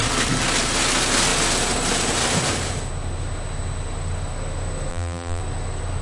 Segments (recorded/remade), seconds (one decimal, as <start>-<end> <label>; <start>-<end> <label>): 0.0-4.9 recorded; 4.9-5.4 remade; 5.4-6.0 recorded